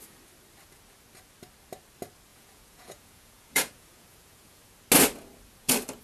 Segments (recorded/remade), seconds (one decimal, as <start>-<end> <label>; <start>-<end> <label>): 0.0-2.3 recorded; 2.3-4.6 remade; 4.6-6.0 recorded